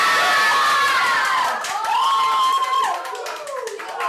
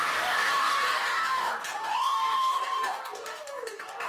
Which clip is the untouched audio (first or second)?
first